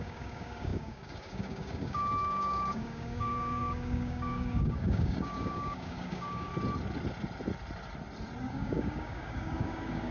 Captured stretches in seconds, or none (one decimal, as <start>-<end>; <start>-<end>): 6.5-8.4